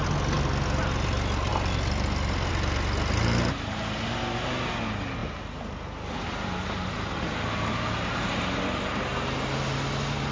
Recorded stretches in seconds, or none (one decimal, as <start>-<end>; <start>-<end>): 0.0-10.3